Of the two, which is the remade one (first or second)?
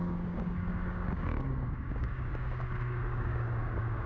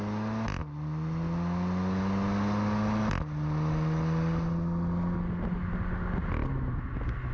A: first